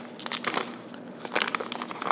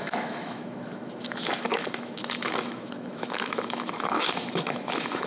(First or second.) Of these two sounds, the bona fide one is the first